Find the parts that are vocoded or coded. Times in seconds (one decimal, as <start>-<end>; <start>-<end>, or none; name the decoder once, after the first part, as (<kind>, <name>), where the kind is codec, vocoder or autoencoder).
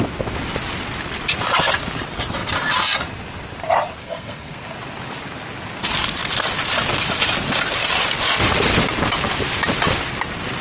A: 4.0-4.6 (codec, SNAC)